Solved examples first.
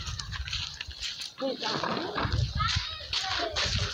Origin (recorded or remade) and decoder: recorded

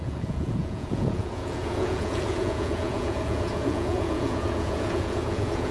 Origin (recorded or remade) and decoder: remade, vocoder, Vocos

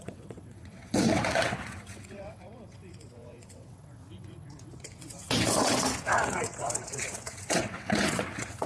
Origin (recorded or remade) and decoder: remade, vocoder, WaveNeXt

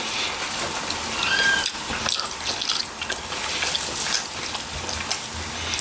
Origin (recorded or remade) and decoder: recorded